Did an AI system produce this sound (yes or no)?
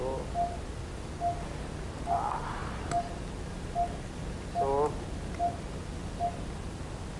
no